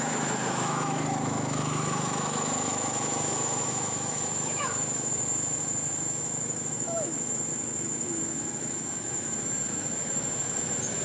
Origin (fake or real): fake